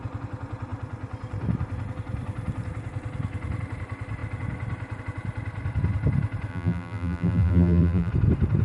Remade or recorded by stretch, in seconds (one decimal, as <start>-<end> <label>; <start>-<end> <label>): 0.0-6.5 recorded; 6.5-8.1 remade; 8.1-8.6 recorded